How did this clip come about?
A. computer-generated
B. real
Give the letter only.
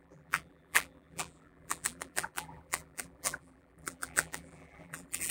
A